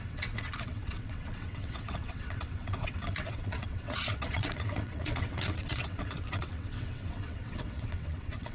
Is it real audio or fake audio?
fake